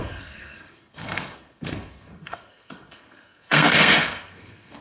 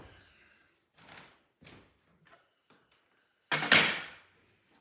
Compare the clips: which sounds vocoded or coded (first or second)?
first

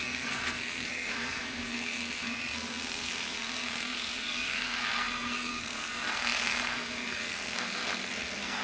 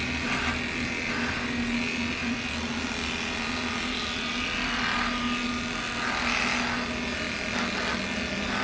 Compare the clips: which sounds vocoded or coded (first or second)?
first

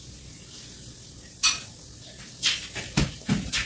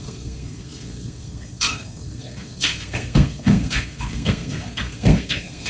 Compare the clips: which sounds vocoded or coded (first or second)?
second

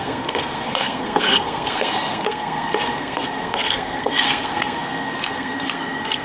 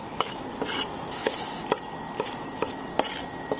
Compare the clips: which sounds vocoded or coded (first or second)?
first